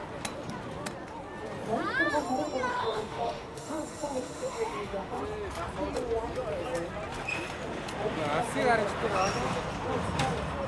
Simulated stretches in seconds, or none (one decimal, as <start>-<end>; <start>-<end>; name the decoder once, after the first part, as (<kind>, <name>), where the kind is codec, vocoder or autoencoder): 2.7-5.2 (autoencoder, DAC-VAE)